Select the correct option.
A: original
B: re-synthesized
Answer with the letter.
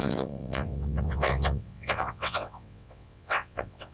B